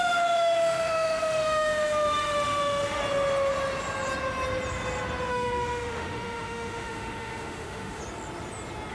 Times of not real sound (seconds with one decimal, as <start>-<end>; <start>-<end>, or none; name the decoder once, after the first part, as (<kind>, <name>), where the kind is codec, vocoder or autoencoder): 0.0-3.0 (autoencoder, DAC-VAE); 5.3-8.0